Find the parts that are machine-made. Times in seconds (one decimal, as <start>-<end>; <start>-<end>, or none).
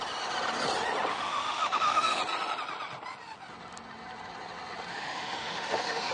1.1-2.2; 4.9-6.1